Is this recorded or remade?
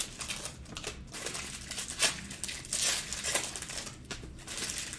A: recorded